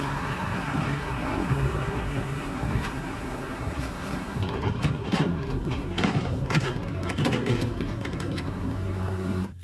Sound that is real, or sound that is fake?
fake